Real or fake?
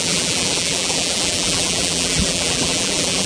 fake